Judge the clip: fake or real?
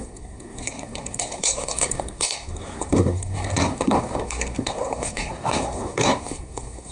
fake